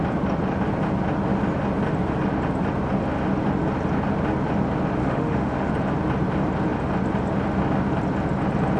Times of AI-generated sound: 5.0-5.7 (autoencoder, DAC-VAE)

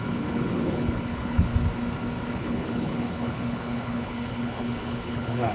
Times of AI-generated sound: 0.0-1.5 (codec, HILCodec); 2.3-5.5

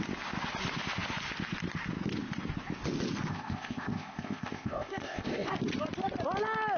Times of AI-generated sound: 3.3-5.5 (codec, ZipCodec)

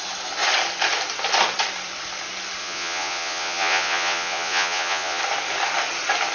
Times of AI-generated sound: 2.6-5.2 (vocoder, Vocos)